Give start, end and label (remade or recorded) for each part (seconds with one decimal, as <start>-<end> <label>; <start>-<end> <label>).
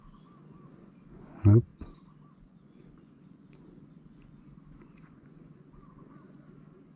0.0-1.7 remade; 1.7-2.3 recorded; 2.3-7.0 remade